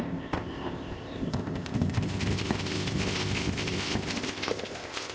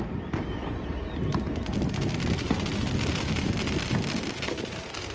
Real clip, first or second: second